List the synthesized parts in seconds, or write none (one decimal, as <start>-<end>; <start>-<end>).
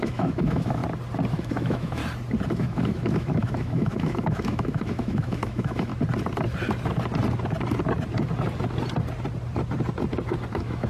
0.0-0.8; 1.3-2.0; 2.5-5.9; 10.5-10.9